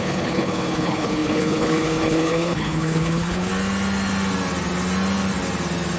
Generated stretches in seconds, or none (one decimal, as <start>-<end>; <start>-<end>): 0.0-3.5